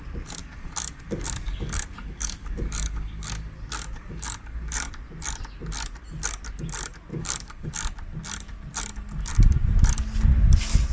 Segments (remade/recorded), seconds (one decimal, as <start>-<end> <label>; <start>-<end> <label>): 0.0-0.4 recorded; 0.4-4.9 remade; 4.9-7.1 recorded; 7.1-7.7 remade; 7.7-10.9 recorded